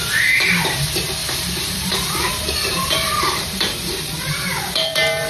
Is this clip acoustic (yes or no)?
no